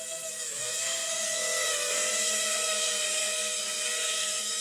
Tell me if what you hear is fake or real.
fake